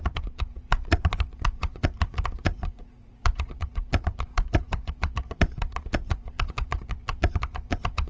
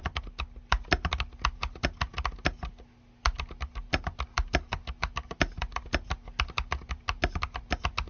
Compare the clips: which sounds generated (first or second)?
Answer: first